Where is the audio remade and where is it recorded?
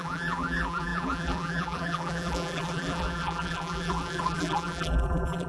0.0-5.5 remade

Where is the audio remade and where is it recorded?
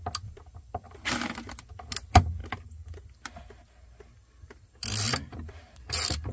0.0-0.5 recorded; 0.5-1.7 remade; 1.7-6.3 recorded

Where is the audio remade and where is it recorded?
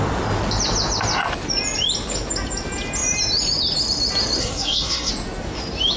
0.0-4.4 recorded; 4.4-5.1 remade; 5.1-6.0 recorded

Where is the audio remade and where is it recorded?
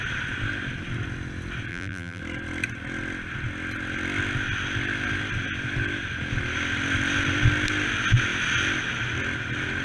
0.0-1.7 recorded; 1.7-2.2 remade; 2.2-9.8 recorded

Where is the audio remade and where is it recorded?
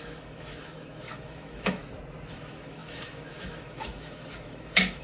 0.0-1.8 remade; 1.8-2.3 recorded; 2.3-5.0 remade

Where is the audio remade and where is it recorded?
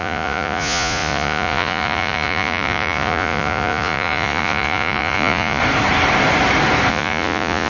0.0-5.6 remade; 5.6-6.9 recorded; 6.9-7.7 remade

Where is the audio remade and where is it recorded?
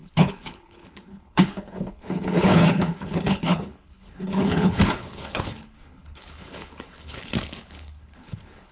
0.0-8.7 remade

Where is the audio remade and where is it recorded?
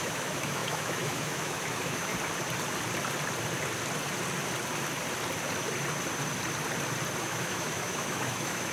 0.0-2.1 remade; 2.1-7.2 recorded; 7.2-8.7 remade